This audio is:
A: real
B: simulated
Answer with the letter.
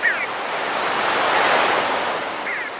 A